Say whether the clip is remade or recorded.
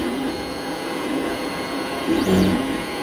remade